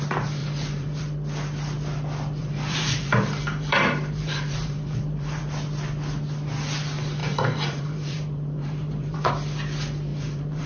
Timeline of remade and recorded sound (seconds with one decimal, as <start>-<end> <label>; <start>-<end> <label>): 0.0-0.4 recorded; 0.4-1.0 remade; 1.0-2.4 recorded; 2.4-5.4 remade; 5.4-7.2 recorded; 7.2-9.3 remade; 9.3-10.1 recorded; 10.1-10.7 remade